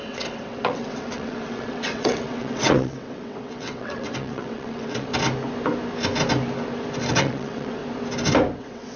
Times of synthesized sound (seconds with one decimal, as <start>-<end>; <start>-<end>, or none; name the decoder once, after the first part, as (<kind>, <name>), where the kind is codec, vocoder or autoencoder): 0.0-5.1 (vocoder, WaveNeXt); 7.1-7.8; 8.6-9.0